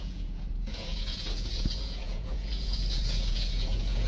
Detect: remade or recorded remade